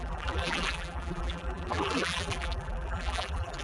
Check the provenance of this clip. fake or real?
fake